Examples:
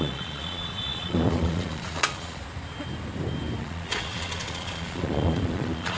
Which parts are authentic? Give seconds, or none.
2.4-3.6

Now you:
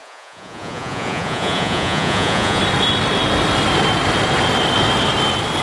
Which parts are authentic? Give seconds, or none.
2.6-5.6

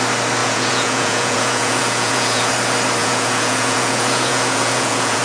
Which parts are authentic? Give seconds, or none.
0.0-0.4; 2.5-3.0